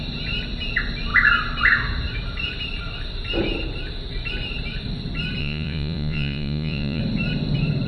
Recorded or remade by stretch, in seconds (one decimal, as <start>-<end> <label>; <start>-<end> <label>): 0.0-5.4 recorded; 5.4-7.0 remade; 7.0-7.9 recorded